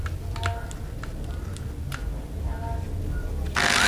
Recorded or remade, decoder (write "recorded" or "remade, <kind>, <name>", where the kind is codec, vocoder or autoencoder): recorded